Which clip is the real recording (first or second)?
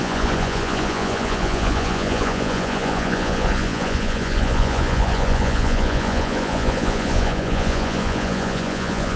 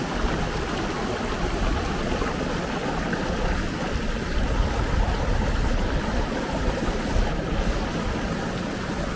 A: second